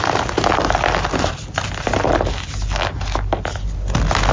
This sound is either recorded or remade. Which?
recorded